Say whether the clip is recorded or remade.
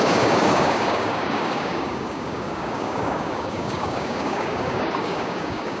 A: remade